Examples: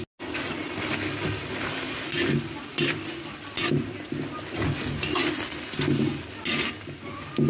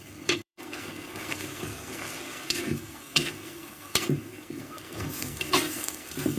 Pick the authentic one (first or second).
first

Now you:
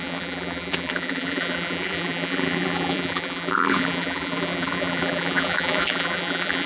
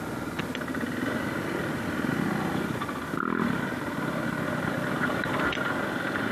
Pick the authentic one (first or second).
second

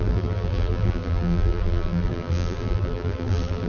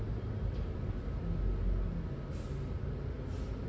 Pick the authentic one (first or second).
second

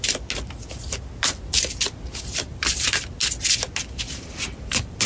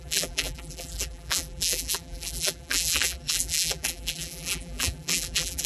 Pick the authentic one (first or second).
first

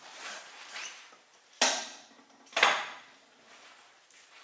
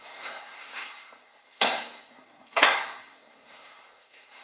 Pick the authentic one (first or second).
first